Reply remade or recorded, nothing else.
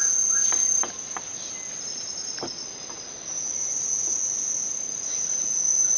recorded